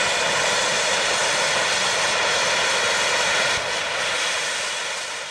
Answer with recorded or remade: recorded